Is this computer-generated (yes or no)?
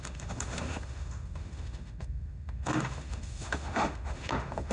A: yes